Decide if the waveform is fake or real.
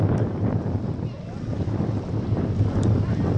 real